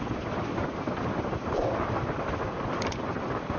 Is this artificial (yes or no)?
no